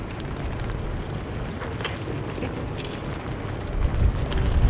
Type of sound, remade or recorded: recorded